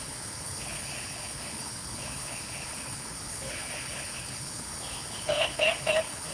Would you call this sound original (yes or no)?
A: no